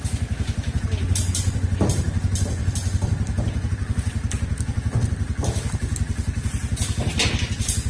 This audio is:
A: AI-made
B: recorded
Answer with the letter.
B